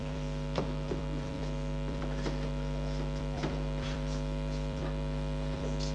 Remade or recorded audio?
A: remade